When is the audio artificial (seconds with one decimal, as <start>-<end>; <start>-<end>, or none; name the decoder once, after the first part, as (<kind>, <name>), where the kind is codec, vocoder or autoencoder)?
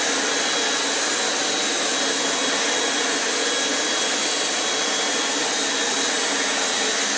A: none